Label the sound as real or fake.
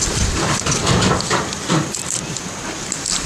fake